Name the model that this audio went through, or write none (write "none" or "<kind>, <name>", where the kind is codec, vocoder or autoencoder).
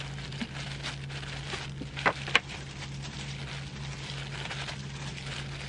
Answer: none